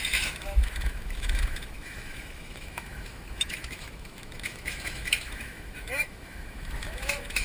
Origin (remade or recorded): remade